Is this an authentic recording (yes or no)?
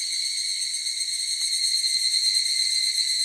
yes